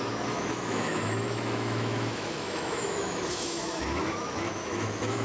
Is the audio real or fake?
fake